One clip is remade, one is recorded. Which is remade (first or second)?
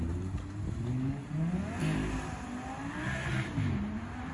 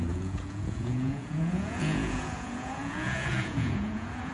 second